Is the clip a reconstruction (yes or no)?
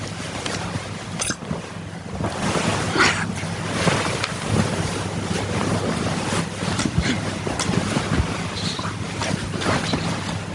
no